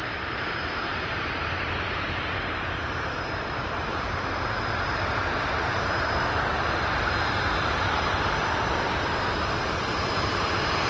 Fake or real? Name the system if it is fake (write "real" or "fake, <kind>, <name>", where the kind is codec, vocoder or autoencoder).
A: fake, vocoder, BigVGAN v2